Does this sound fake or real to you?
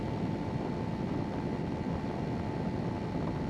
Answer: real